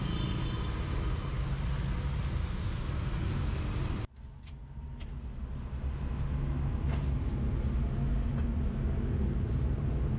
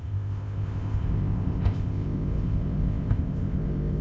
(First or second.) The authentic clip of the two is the first